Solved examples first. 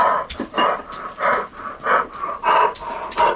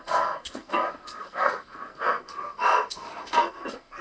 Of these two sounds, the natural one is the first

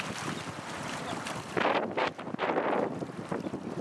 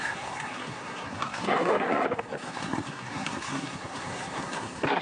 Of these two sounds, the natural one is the first